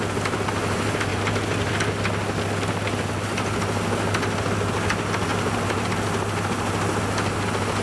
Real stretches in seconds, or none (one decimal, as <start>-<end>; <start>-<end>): 0.0-7.8